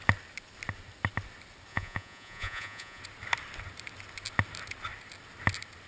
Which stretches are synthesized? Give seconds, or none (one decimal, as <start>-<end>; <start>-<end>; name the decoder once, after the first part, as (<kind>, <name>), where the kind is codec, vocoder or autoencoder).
1.7-3.0 (vocoder, Vocos)